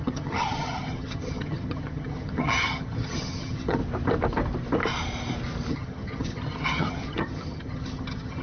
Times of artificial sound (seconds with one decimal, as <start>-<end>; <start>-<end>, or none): 0.0-3.8; 5.7-8.4

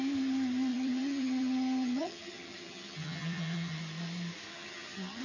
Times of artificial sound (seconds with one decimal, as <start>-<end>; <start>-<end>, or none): 0.7-3.8; 4.5-5.2

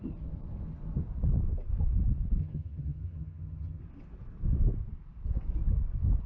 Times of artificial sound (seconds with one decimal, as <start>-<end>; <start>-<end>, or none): 2.4-3.8

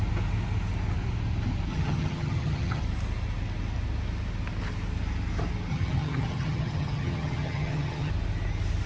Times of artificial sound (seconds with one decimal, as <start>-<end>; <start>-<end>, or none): 1.7-2.8; 5.7-8.1

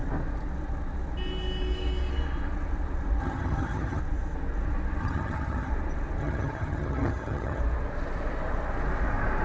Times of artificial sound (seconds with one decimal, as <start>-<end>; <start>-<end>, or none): 3.2-4.0; 5.0-5.7; 6.2-7.6

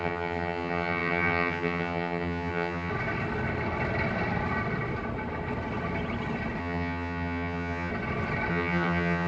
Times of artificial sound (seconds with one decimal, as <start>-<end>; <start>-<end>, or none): 0.0-2.9; 6.6-7.9; 8.5-9.3

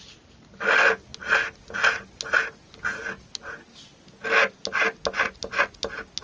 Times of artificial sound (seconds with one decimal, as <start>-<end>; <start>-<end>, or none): none

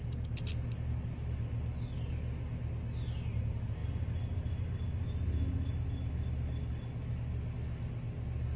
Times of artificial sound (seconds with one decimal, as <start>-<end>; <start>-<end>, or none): none